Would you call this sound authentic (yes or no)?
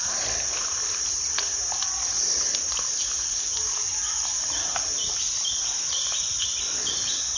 yes